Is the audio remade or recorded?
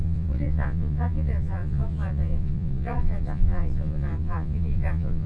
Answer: remade